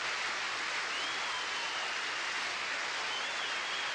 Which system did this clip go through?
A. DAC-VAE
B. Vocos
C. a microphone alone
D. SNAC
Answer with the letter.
C